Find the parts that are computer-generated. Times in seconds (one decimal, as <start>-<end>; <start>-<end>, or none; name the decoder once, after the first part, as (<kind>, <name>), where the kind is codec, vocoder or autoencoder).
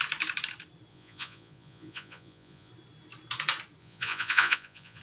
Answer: 0.9-2.7 (vocoder, Vocos); 3.8-5.0